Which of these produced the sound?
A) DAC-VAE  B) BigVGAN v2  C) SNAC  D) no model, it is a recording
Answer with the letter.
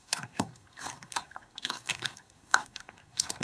C